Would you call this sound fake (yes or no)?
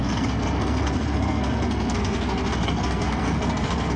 yes